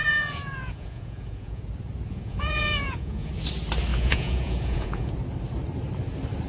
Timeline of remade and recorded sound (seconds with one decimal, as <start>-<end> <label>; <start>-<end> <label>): 0.0-1.6 remade; 1.6-2.1 recorded; 2.1-3.3 remade; 3.3-3.9 recorded; 3.9-5.1 remade; 5.1-6.5 recorded